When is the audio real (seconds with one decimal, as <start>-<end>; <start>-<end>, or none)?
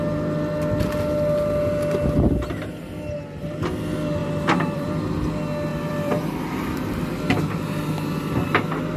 0.0-4.2; 4.9-5.7; 7.2-9.0